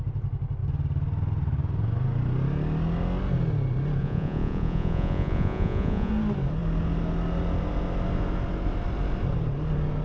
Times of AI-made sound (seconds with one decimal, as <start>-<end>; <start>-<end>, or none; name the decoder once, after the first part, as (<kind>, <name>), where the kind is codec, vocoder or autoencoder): 4.0-6.1 (vocoder, Vocos)